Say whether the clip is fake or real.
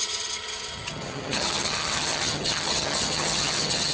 fake